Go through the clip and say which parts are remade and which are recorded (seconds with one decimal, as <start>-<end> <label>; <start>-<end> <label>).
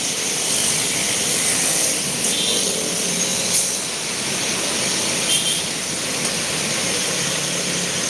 0.0-8.1 recorded